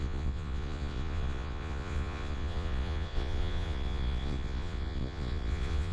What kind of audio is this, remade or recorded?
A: remade